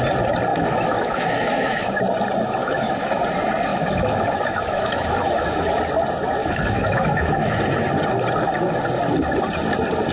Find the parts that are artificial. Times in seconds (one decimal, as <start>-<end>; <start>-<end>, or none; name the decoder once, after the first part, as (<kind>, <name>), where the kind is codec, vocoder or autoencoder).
0.5-2.0 (autoencoder, DAC-VAE); 2.6-3.2; 3.7-5.8; 6.4-7.6